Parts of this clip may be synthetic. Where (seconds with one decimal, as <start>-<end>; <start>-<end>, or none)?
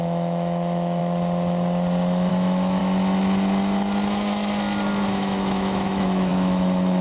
0.0-1.0; 2.3-2.8; 5.1-7.0